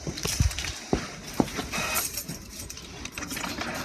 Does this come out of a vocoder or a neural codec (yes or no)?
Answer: yes